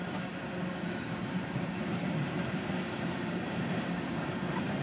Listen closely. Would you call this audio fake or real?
fake